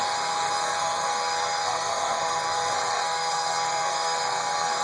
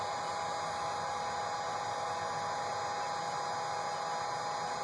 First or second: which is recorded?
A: second